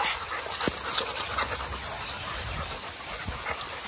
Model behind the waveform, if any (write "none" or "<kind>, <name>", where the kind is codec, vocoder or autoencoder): none